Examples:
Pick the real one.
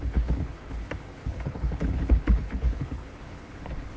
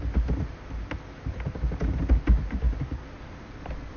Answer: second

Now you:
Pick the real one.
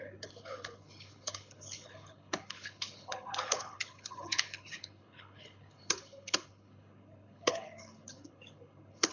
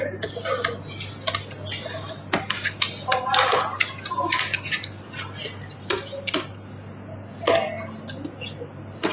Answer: second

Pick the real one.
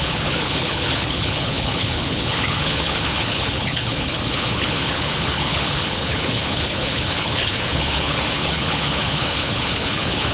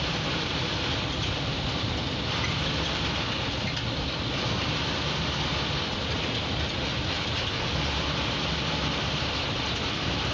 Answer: second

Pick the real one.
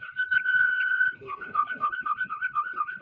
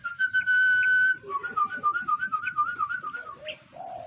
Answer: second